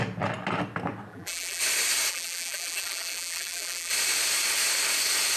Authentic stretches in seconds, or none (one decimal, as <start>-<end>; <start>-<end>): 0.0-1.1; 1.6-2.1; 3.9-5.4